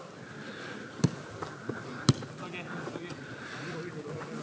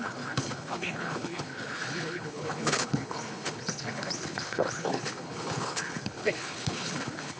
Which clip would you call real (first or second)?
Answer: first